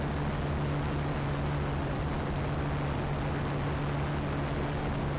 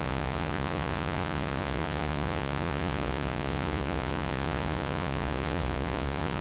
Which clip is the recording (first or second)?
first